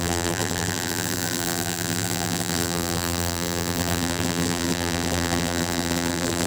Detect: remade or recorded remade